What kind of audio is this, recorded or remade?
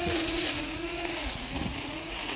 remade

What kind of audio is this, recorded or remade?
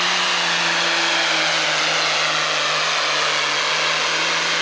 recorded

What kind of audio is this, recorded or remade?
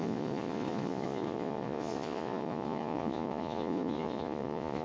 remade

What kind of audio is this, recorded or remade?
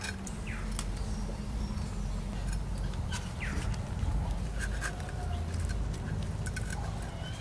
recorded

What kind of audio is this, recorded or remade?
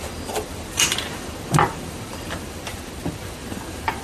remade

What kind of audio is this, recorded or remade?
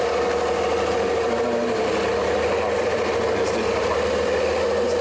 recorded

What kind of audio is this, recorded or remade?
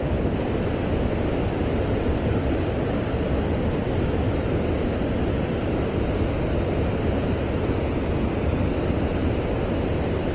recorded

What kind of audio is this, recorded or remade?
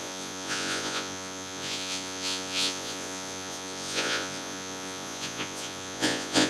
remade